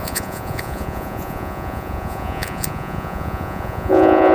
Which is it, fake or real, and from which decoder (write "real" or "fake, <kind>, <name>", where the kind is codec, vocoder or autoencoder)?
fake, vocoder, Vocos